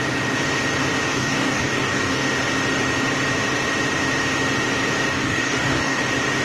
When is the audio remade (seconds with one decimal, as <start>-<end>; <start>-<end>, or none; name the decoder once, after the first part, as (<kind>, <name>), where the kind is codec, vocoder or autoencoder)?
1.1-2.2 (codec, DAC); 5.1-6.0